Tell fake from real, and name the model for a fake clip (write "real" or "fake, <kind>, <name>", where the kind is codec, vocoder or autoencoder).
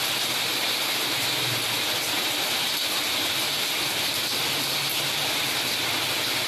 real